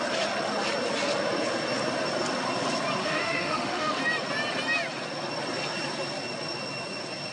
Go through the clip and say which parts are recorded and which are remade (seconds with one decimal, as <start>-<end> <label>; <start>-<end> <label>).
0.0-3.0 recorded; 3.0-4.0 remade; 4.0-7.3 recorded